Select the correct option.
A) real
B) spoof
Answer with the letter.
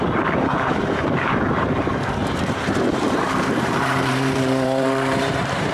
B